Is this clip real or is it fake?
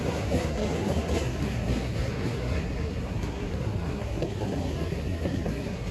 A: fake